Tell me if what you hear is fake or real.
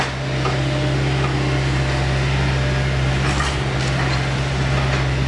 real